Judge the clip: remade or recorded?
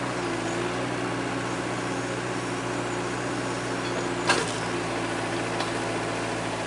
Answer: recorded